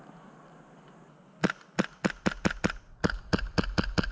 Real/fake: real